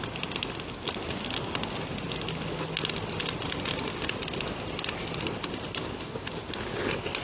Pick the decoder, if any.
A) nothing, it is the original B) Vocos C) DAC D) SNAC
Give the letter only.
A